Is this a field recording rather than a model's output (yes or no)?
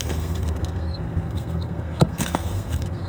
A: no